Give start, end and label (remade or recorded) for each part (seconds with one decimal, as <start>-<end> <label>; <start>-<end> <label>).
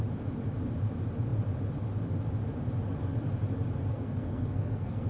0.0-3.9 recorded; 3.9-5.1 remade